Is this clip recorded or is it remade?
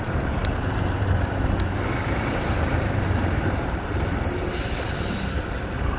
remade